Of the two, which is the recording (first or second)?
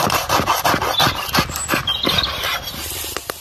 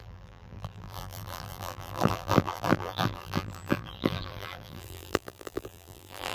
first